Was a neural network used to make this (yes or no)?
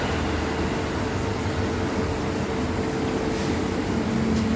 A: no